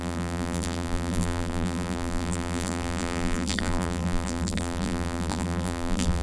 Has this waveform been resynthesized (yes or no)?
yes